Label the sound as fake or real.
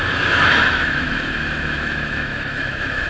fake